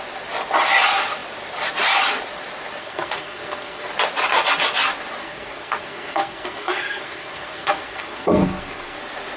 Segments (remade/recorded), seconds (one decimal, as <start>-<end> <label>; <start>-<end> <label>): 0.0-2.8 recorded; 2.8-3.9 remade; 3.9-5.2 recorded; 5.2-9.0 remade; 9.0-9.4 recorded